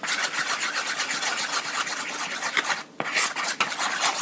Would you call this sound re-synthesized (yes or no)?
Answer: no